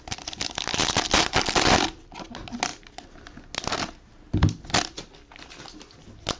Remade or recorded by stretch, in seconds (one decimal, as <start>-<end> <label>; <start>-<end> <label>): 0.0-6.4 recorded